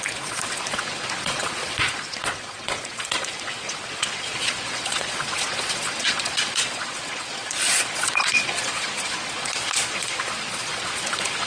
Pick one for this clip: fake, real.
fake